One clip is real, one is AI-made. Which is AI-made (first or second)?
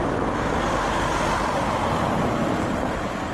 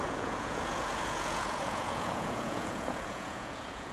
second